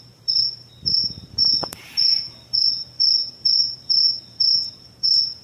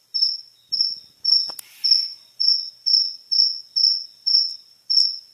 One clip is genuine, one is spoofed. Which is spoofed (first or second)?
first